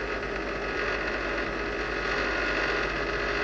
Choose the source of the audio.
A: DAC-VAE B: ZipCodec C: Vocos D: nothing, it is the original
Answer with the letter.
D